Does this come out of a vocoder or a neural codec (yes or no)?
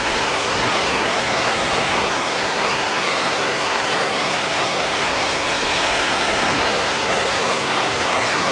yes